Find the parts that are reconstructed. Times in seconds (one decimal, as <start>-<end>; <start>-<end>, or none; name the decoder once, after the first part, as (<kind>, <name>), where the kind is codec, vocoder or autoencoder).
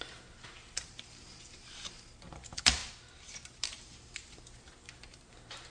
0.0-2.8 (vocoder, BigVGAN v2); 3.5-5.7